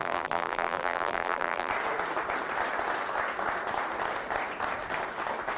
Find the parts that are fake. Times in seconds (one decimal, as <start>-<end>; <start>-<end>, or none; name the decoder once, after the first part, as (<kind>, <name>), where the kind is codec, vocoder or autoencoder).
0.0-1.7 (vocoder, BigVGAN v2)